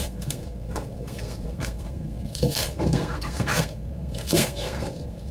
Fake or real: fake